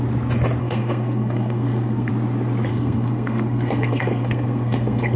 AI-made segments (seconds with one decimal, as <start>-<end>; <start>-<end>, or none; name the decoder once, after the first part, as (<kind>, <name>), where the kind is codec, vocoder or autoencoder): 0.6-2.1 (codec, SNAC); 2.7-5.2